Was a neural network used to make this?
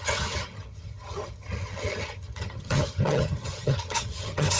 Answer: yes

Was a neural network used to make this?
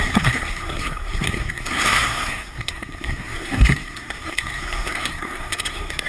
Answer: yes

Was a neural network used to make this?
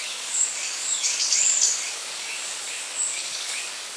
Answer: yes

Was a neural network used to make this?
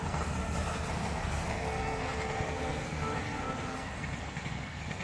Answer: yes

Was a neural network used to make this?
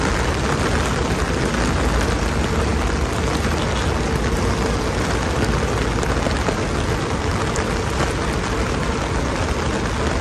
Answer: no